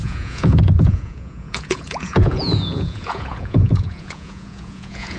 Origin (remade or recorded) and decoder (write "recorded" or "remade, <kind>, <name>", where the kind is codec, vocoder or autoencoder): remade, vocoder, Vocos